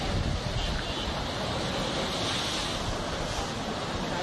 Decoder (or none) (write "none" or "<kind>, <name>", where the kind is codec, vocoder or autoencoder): none